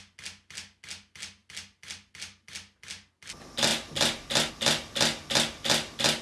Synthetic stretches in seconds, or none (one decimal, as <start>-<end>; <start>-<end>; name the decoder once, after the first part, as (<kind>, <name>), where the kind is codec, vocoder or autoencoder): none